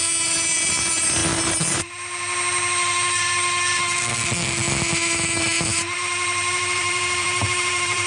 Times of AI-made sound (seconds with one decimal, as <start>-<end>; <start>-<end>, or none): 0.0-1.2; 5.4-8.1